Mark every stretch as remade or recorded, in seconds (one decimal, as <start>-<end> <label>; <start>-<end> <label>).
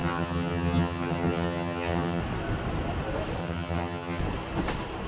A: 0.0-2.2 remade; 2.2-3.4 recorded; 3.4-4.2 remade; 4.2-5.1 recorded